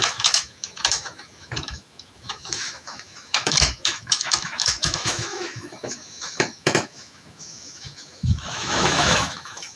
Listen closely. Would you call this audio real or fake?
fake